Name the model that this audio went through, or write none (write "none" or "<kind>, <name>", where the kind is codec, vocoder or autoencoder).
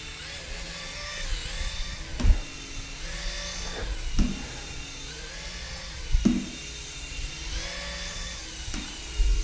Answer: none